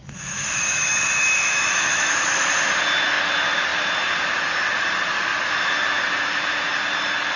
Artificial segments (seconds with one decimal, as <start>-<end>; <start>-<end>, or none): 0.0-2.5